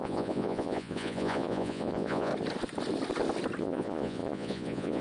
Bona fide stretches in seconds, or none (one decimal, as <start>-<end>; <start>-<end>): 2.3-3.6